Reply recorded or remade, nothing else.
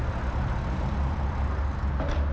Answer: recorded